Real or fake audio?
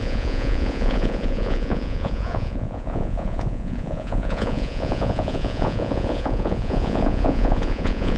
fake